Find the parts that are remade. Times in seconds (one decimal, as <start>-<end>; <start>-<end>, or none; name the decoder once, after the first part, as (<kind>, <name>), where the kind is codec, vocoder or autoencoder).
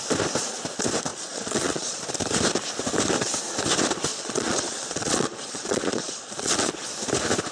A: 1.1-2.0 (vocoder, Vocos); 4.1-6.7